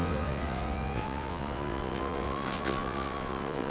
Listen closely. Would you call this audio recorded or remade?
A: remade